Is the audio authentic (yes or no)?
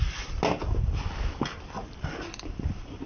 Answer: yes